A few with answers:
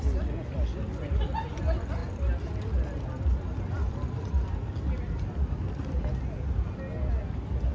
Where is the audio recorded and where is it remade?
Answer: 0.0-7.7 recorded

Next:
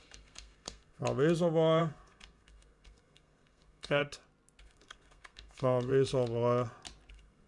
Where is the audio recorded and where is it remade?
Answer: 0.0-1.0 remade; 1.0-1.8 recorded; 1.8-4.0 remade; 4.0-4.6 recorded; 4.6-5.9 remade; 5.9-7.1 recorded; 7.1-7.5 remade

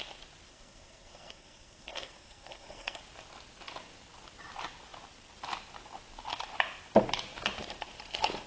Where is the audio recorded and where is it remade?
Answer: 0.0-0.5 recorded; 0.5-3.0 remade; 3.0-8.5 recorded

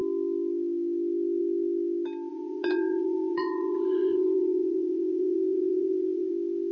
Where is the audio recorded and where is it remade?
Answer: 0.0-2.3 recorded; 2.3-6.3 remade; 6.3-6.7 recorded

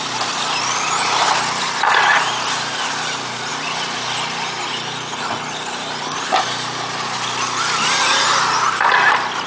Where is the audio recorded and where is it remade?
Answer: 0.0-9.5 recorded